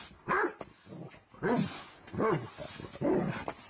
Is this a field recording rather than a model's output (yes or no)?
yes